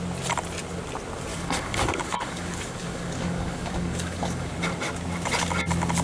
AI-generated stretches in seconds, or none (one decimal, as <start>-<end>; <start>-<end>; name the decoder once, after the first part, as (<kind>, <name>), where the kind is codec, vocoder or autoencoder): 1.3-4.5 (codec, DAC)